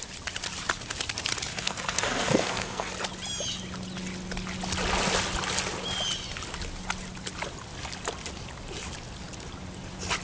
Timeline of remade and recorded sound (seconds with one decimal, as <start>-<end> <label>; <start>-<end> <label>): 0.0-1.5 recorded; 1.5-2.9 remade; 2.9-10.2 recorded